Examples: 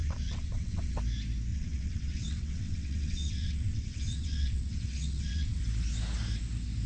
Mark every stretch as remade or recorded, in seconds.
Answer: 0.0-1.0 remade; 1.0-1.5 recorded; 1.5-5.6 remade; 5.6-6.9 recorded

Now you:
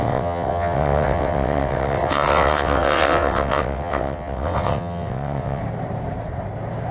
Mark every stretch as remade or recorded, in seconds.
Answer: 0.0-5.6 remade; 5.6-6.9 recorded

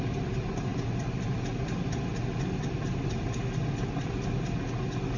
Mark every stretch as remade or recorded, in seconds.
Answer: 0.0-5.2 recorded